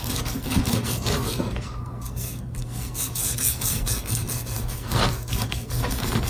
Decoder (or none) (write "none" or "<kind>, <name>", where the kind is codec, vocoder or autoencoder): codec, SNAC